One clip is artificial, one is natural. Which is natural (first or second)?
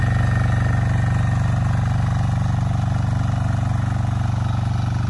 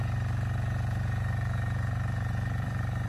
first